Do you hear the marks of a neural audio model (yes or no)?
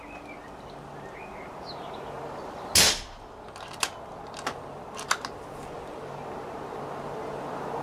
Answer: no